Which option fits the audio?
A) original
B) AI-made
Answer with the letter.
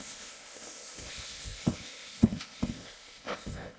B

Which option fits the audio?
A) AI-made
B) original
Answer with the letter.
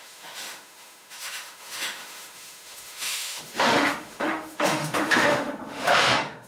A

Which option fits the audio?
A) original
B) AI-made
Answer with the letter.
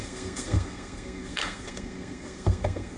B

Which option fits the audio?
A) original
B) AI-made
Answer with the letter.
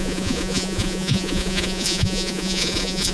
B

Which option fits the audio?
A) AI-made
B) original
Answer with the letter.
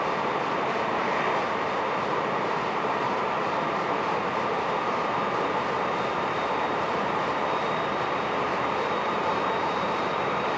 A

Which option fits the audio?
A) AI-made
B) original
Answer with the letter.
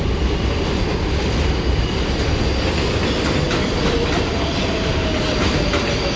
B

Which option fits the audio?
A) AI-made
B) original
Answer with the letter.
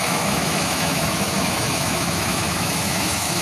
A